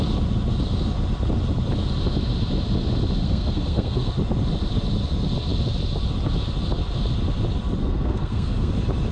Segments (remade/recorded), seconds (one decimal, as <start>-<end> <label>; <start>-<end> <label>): 0.0-3.2 recorded; 3.2-4.1 remade; 4.1-7.8 recorded; 7.8-8.7 remade; 8.7-9.1 recorded